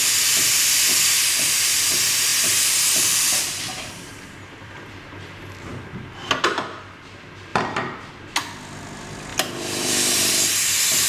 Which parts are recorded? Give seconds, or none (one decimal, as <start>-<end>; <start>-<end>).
0.0-2.3; 4.9-7.5; 8.1-9.3; 10.3-11.1